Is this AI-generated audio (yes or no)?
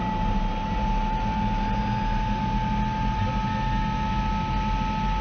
no